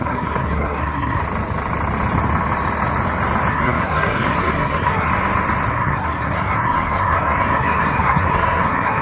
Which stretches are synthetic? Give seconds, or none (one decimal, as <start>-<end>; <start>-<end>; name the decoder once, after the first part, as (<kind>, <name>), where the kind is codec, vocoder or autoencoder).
0.0-1.2 (codec, SNAC); 3.5-5.1; 5.7-9.0